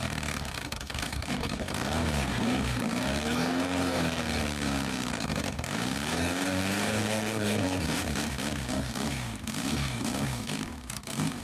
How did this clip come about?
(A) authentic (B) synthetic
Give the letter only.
B